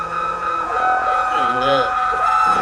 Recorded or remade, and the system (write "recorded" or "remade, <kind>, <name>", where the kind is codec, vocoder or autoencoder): remade, vocoder, Vocos